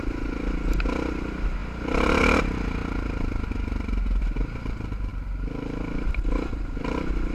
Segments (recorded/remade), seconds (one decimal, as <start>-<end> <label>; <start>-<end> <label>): 0.0-7.3 recorded